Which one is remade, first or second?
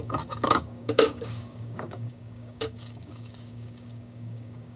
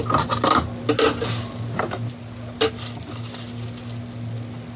first